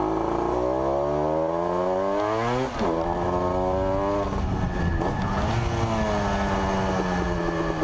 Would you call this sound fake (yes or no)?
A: no